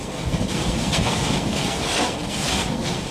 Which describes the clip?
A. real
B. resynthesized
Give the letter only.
B